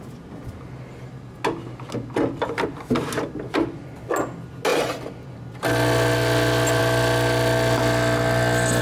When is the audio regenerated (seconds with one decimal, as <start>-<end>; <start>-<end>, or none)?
none